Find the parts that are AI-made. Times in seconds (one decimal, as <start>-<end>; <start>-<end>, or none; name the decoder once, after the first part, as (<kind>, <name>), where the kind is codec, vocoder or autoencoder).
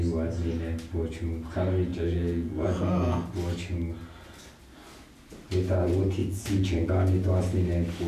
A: 1.9-3.1 (vocoder, Vocos); 6.2-6.9